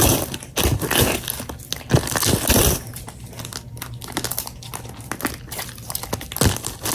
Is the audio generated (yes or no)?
no